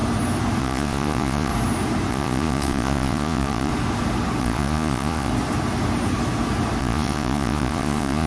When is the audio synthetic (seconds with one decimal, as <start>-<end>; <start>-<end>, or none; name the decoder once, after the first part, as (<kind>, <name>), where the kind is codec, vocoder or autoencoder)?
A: 0.6-1.5 (vocoder, Vocos); 2.1-3.7; 4.4-5.3; 6.8-8.3